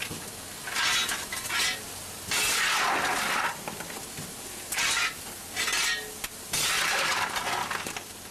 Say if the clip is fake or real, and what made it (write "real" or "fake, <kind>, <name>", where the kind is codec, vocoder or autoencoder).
real